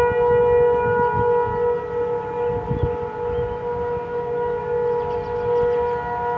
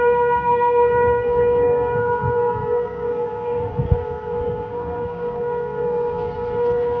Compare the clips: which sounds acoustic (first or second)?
first